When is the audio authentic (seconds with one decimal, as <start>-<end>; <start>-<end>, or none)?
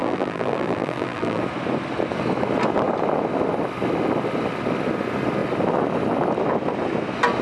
1.4-7.4